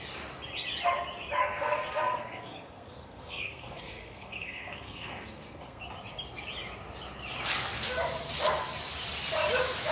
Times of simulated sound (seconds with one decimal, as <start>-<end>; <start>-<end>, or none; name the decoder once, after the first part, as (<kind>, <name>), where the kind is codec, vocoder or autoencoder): 1.4-5.8 (codec, SNAC)